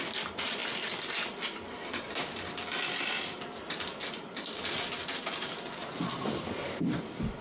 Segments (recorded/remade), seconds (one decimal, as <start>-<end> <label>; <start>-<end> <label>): 0.0-7.4 recorded